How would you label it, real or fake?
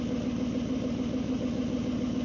real